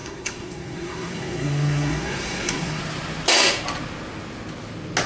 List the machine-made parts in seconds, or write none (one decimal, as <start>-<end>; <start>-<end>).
0.0-2.8